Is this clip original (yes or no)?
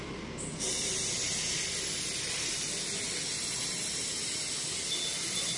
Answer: yes